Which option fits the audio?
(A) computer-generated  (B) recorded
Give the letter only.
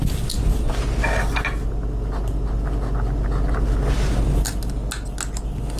B